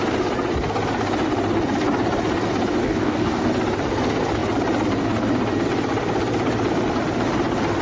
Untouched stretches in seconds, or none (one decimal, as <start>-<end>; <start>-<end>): 0.0-2.8; 3.5-7.8